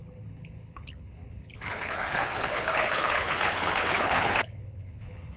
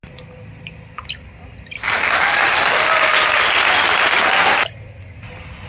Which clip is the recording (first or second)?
second